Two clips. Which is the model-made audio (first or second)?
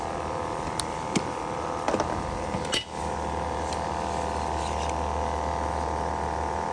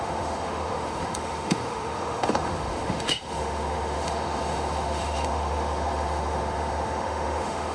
second